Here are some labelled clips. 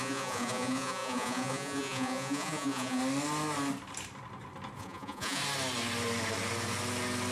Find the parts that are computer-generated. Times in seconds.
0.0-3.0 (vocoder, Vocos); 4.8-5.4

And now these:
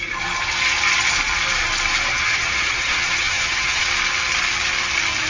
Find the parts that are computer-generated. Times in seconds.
2.1-3.8 (vocoder, HiFi-GAN)

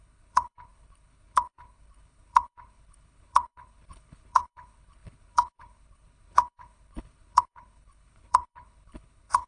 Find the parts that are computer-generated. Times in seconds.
0.0-9.5 (codec, HILCodec)